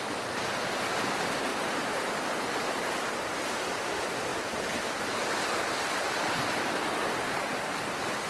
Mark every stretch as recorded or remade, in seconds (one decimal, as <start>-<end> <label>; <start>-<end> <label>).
0.0-8.3 recorded